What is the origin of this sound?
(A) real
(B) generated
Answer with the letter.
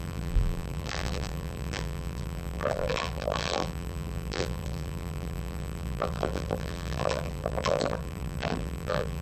B